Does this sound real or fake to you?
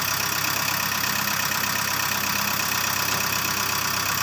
real